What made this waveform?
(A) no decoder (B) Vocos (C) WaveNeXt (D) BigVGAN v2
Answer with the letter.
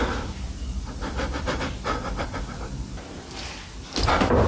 D